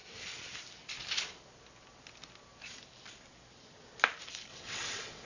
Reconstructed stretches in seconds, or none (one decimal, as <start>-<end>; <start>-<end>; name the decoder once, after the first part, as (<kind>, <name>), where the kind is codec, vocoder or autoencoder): 4.5-5.3 (vocoder, WaveNeXt)